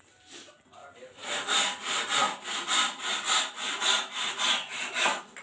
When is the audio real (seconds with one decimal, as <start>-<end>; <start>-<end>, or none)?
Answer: 0.0-5.4